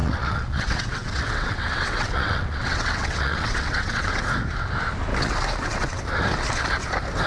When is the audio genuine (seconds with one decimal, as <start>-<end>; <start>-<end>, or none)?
4.2-5.1; 6.0-7.3